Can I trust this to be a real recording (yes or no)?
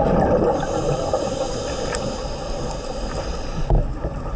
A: no